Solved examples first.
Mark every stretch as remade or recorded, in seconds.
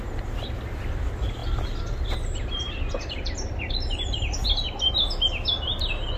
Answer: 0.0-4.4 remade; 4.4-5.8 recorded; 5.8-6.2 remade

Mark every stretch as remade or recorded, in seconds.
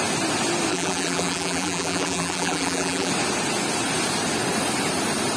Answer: 0.0-0.7 recorded; 0.7-3.1 remade; 3.1-5.4 recorded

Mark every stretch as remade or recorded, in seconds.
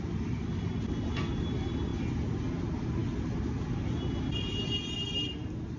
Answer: 0.0-5.8 recorded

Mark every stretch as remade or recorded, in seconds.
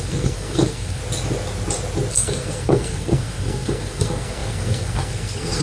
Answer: 0.0-1.0 remade; 1.0-2.1 recorded; 2.1-5.6 remade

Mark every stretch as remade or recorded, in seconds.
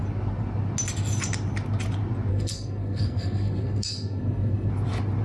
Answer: 0.0-2.3 recorded; 2.3-4.7 remade; 4.7-5.2 recorded